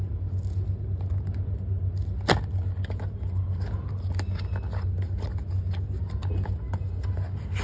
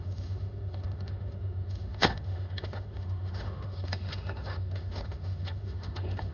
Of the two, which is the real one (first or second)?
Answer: first